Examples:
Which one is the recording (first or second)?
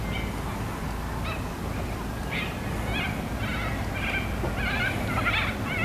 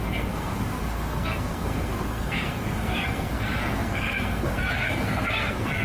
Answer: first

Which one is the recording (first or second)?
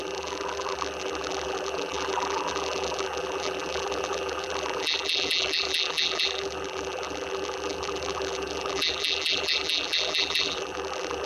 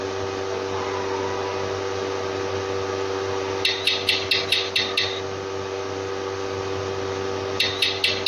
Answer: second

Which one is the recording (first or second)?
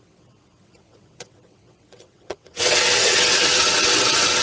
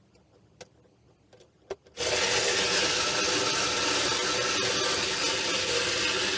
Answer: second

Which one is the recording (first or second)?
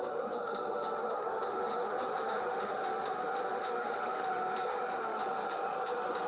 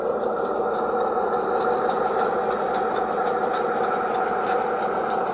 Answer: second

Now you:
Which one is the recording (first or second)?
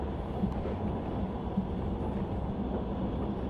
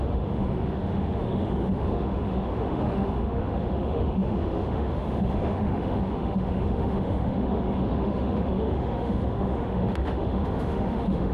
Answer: first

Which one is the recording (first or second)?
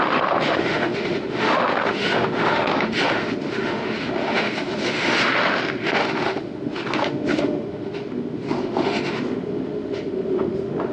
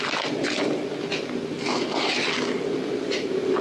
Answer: second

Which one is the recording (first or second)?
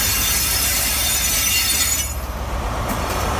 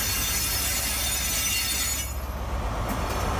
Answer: second